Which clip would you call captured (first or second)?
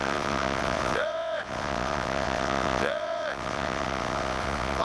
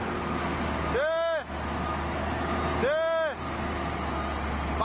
second